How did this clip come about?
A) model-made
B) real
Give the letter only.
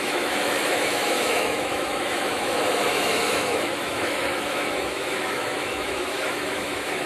A